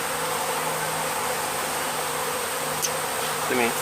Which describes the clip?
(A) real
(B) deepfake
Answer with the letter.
A